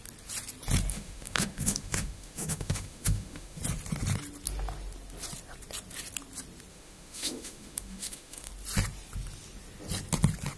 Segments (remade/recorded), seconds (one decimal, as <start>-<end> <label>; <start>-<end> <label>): 0.0-0.9 recorded; 0.9-3.6 remade; 3.6-6.7 recorded; 6.7-8.5 remade; 8.5-10.6 recorded